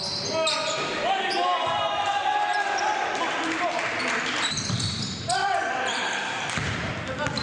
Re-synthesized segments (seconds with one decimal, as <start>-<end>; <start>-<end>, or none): 2.5-6.9